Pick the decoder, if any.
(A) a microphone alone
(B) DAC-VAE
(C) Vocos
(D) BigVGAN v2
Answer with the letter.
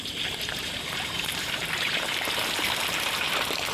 D